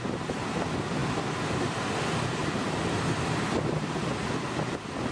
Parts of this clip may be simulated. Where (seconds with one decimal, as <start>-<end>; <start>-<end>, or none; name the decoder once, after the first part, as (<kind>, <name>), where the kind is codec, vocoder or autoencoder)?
2.4-4.3 (vocoder, BigVGAN v2)